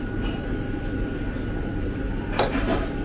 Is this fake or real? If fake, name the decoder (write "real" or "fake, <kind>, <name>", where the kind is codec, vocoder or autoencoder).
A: fake, vocoder, BigVGAN v2